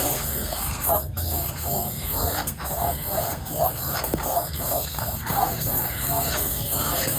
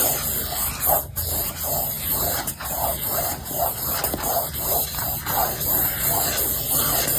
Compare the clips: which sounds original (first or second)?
second